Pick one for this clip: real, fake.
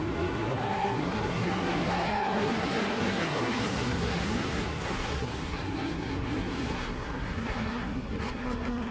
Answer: fake